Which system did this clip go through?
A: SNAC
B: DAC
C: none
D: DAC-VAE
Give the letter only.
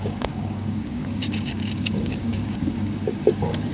B